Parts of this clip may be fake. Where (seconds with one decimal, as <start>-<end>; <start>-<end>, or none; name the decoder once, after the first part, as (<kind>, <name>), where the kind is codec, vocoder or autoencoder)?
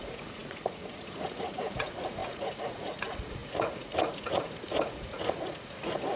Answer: 0.0-6.2 (vocoder, Vocos)